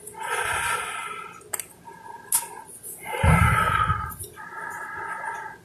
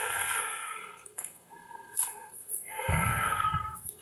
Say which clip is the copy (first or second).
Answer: second